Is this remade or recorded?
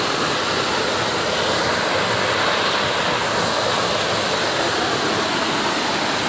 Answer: recorded